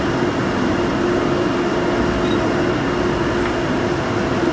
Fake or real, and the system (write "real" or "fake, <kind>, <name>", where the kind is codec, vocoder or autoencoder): real